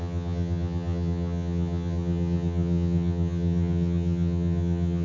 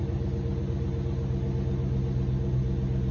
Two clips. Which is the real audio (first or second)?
second